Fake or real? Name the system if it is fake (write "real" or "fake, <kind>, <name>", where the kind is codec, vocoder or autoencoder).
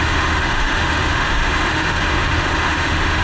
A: fake, autoencoder, DAC-VAE